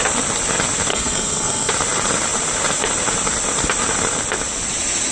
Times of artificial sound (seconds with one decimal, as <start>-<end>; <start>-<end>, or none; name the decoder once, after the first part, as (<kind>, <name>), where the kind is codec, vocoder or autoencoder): 0.9-1.7 (codec, SNAC)